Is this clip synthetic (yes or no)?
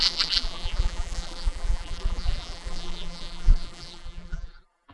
yes